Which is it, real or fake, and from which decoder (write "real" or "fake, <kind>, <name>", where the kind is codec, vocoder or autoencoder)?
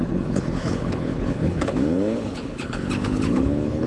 fake, codec, HILCodec